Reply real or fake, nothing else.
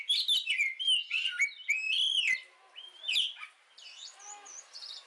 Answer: real